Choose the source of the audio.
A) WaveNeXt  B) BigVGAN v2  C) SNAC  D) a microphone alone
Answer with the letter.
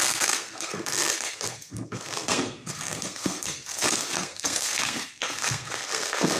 C